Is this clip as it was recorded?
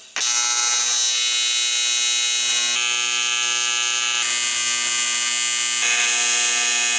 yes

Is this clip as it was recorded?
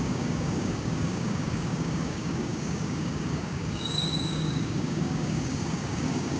no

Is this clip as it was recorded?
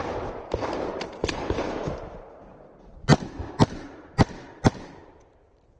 no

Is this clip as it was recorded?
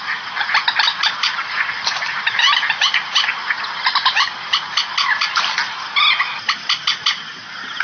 yes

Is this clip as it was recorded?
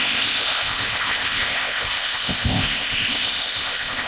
no